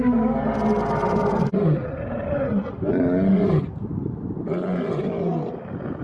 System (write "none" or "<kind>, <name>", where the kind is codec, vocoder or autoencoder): none